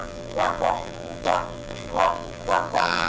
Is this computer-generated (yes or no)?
yes